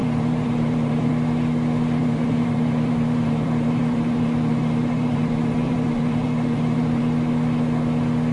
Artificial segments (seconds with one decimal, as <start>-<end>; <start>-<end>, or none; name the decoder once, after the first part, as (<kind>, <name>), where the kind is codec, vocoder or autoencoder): 0.0-1.1 (vocoder, BigVGAN v2); 2.0-7.0